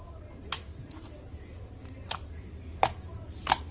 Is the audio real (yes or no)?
yes